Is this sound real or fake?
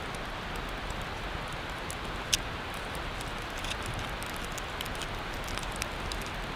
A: real